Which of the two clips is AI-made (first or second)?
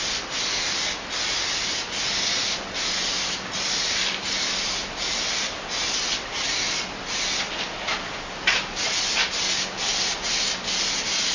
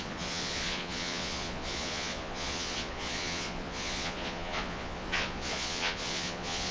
second